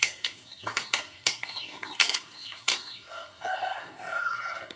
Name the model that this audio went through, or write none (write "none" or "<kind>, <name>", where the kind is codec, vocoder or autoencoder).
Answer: codec, SNAC